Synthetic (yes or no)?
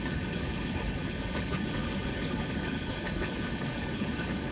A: yes